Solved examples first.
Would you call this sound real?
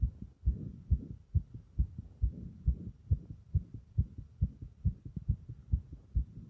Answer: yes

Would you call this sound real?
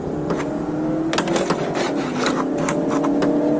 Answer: yes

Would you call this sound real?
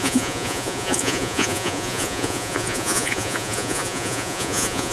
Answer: no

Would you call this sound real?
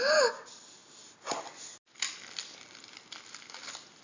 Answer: yes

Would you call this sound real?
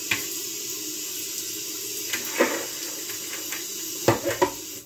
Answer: yes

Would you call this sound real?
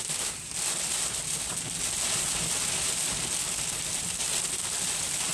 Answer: yes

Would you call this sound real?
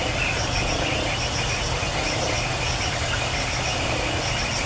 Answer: yes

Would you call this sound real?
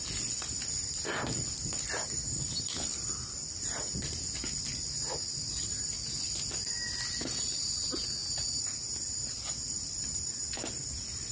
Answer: yes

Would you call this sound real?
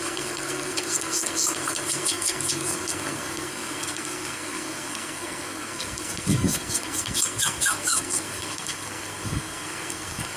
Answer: no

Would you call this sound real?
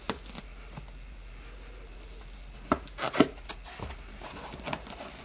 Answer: yes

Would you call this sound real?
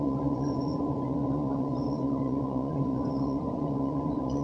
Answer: no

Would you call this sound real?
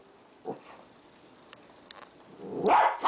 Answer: yes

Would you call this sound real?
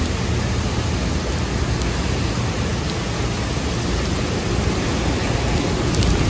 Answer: yes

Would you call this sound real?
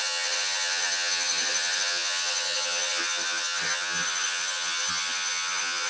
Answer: no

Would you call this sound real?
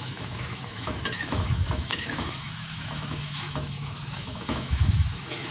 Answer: no